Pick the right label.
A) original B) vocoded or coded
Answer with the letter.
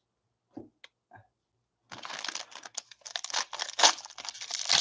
A